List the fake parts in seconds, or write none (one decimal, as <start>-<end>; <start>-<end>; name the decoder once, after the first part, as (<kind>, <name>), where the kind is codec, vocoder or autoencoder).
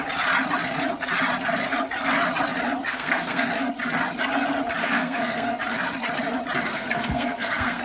2.9-3.5 (codec, SNAC); 4.8-5.6; 6.7-7.8